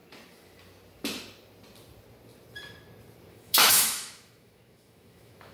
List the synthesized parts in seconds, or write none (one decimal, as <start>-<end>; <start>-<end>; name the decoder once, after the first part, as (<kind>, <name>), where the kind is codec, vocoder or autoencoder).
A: 3.3-5.5 (autoencoder, DAC-VAE)